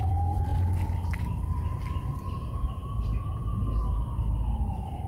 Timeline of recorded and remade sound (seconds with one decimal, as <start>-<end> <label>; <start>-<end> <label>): 0.0-0.5 remade; 0.5-1.2 recorded; 1.2-2.8 remade; 2.8-3.4 recorded; 3.4-5.1 remade